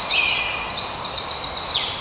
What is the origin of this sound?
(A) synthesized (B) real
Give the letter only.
B